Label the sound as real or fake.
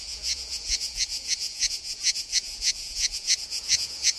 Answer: fake